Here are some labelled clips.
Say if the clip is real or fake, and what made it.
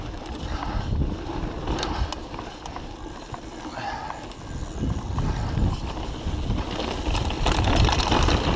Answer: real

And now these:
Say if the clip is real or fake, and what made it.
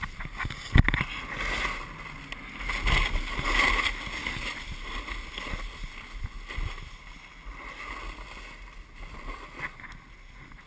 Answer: real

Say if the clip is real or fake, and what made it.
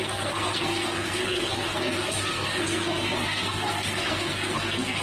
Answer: fake, codec, SNAC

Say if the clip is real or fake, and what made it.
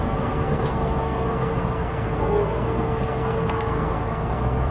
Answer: fake, codec, SNAC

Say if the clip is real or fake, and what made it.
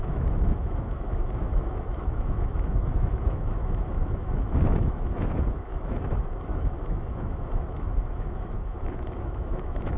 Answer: fake, autoencoder, DAC-VAE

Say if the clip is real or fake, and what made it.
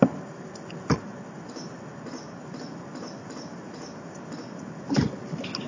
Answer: real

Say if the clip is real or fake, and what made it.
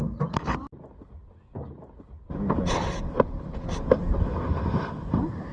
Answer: real